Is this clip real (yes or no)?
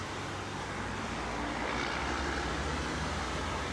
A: yes